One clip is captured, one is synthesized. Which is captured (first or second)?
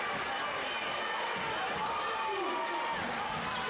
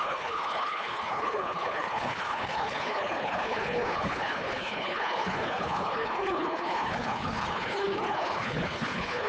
first